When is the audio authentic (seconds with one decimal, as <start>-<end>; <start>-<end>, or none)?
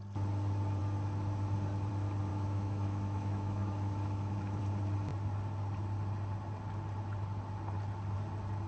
0.0-2.3; 4.6-8.7